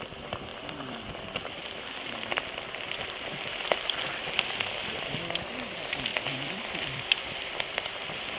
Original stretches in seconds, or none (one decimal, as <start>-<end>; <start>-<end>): 0.0-0.5; 2.4-6.1; 8.0-8.4